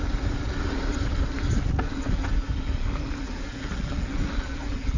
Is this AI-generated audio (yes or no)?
no